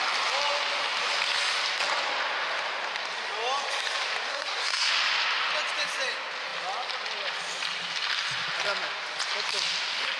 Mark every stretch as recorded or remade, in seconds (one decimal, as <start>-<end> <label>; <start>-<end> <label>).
0.0-4.3 recorded; 4.3-4.9 remade; 4.9-10.2 recorded